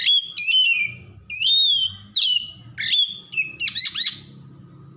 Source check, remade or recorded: recorded